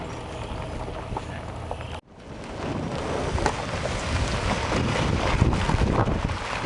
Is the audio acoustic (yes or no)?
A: yes